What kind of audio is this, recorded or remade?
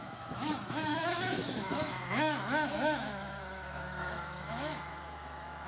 remade